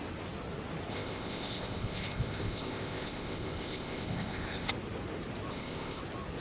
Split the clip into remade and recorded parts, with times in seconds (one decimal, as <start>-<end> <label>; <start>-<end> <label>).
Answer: 0.0-0.9 recorded; 0.9-4.7 remade; 4.7-5.5 recorded; 5.5-6.0 remade; 6.0-6.4 recorded